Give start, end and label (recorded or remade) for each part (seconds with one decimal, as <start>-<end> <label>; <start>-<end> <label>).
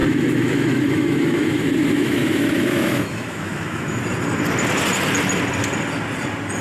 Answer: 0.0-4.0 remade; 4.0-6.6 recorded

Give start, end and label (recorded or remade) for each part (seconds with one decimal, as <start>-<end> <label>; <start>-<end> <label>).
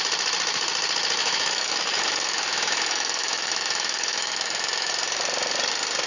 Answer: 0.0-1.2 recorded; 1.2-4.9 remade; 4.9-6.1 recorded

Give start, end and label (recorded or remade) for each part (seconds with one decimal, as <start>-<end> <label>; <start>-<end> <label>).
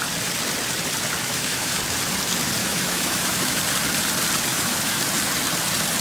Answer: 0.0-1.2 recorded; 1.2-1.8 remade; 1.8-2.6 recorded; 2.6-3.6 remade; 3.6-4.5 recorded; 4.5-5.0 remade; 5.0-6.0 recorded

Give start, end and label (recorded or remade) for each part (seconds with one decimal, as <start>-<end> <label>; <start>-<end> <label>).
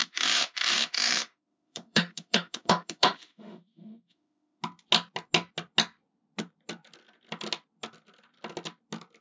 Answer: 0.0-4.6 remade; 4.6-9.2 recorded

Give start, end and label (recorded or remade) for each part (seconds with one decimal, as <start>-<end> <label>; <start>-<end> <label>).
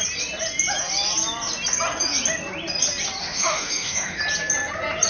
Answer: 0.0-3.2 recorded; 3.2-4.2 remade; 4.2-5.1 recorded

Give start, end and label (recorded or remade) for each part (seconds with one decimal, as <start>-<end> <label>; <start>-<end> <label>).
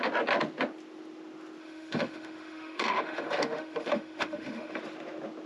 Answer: 0.0-1.6 recorded; 1.6-4.8 remade; 4.8-5.5 recorded